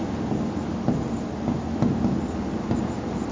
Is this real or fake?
real